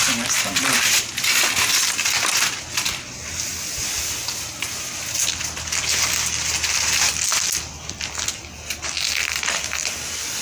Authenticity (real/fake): real